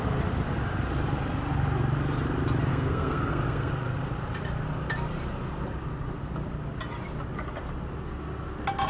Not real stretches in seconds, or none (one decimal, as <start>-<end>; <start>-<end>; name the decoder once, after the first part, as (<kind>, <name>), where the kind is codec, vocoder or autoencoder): 2.7-3.7 (codec, SNAC)